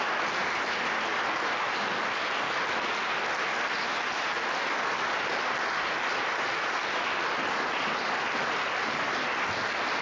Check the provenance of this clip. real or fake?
real